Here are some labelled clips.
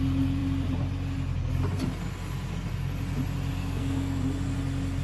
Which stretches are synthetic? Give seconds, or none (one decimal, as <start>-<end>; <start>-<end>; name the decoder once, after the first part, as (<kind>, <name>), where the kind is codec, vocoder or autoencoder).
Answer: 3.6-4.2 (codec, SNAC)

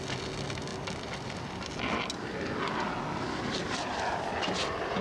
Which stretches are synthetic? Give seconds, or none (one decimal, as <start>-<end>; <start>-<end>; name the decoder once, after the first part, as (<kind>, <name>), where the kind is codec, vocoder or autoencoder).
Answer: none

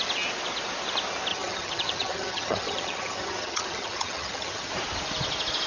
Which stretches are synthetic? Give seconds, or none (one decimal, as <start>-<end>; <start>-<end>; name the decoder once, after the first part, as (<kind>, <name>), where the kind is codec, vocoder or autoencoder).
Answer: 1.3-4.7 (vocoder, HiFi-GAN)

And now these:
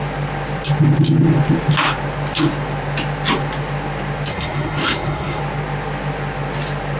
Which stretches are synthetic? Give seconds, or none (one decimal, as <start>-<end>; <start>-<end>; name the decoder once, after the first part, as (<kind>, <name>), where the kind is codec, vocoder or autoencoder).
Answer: 4.3-5.4 (codec, SNAC)